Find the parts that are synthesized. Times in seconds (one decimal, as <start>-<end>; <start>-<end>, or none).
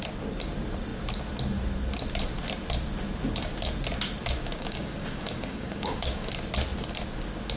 4.4-6.3